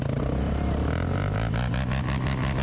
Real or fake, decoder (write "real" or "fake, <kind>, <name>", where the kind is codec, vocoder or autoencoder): real